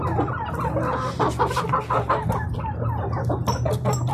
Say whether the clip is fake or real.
real